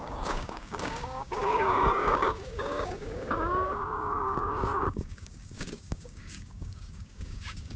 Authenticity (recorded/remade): remade